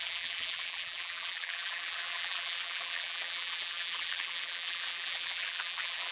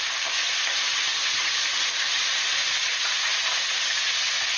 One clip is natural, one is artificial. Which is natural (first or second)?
second